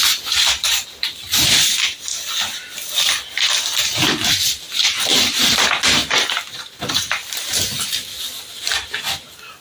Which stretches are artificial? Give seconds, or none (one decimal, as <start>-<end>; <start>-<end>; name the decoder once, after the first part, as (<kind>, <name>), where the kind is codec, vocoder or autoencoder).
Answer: 0.0-2.1 (vocoder, BigVGAN v2); 4.3-9.6